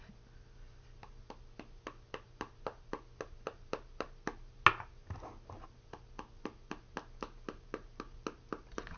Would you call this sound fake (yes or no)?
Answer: no